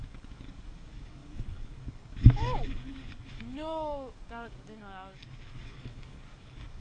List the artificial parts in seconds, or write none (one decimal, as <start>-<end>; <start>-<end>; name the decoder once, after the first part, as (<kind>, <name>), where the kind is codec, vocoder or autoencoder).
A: 0.0-6.8 (codec, DAC)